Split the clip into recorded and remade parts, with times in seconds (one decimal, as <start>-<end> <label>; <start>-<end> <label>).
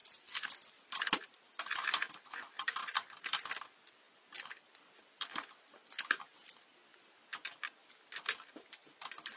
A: 0.0-2.8 remade; 2.8-3.5 recorded; 3.5-6.7 remade; 6.7-9.4 recorded